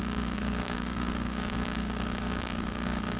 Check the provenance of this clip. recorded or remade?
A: remade